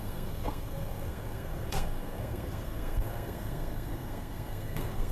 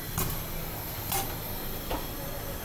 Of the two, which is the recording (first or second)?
second